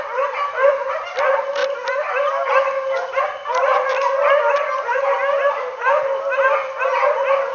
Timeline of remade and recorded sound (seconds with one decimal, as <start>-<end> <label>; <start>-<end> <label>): 0.0-7.5 recorded